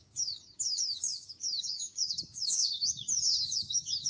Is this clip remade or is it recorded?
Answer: remade